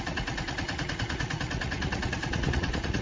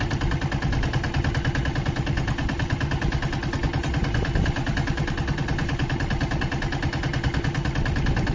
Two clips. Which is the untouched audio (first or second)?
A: second